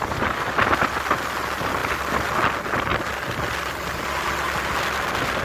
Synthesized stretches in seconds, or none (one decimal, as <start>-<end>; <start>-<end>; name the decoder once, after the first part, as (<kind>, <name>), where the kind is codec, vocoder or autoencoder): none